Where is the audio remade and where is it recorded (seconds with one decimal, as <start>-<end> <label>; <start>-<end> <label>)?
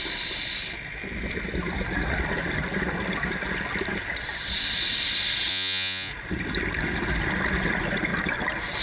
0.0-5.5 recorded; 5.5-6.1 remade; 6.1-8.8 recorded